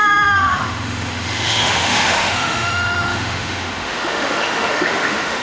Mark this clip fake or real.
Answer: fake